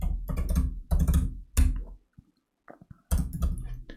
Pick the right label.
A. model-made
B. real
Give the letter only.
B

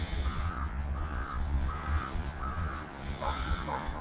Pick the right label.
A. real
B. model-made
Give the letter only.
B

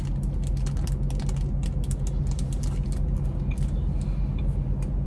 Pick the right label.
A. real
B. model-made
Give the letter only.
A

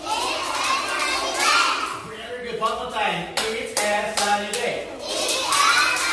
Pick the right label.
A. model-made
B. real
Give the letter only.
B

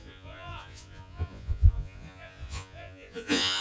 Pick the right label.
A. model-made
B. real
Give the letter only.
A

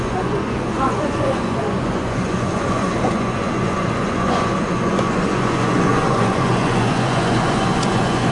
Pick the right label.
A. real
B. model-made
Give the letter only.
B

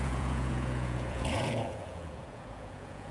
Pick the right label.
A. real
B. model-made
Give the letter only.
B